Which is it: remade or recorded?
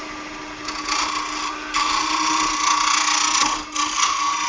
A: recorded